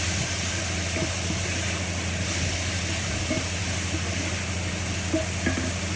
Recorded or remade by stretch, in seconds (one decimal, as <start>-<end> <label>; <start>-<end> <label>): 0.0-6.0 recorded